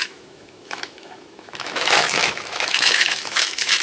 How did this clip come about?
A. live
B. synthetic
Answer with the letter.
B